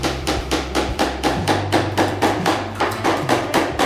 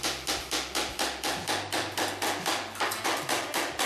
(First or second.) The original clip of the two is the second